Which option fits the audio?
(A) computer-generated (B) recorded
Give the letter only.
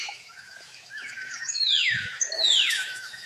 A